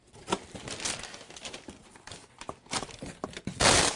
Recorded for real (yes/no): no